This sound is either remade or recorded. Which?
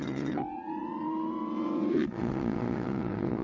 remade